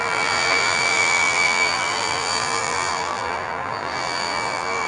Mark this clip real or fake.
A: fake